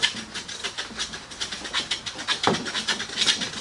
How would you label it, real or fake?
real